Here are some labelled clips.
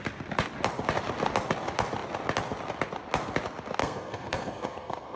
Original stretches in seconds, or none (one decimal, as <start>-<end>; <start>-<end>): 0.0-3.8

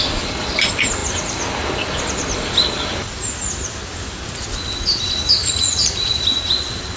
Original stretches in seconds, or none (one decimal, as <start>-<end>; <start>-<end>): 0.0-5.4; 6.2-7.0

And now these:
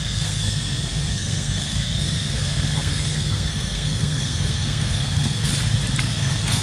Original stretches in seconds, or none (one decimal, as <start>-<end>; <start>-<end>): 5.5-6.0

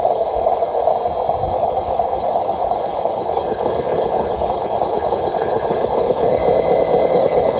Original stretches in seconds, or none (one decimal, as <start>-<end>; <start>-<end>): 0.9-1.5; 6.4-7.1

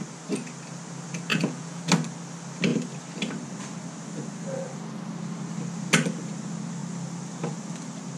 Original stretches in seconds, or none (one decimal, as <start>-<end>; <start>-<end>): 0.0-1.3; 1.8-8.2

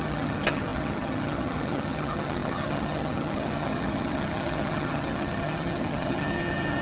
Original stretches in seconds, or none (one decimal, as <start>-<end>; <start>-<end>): none